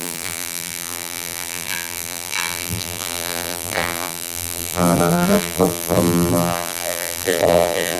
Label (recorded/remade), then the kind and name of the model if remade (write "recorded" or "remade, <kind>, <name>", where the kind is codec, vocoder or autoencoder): remade, vocoder, BigVGAN v2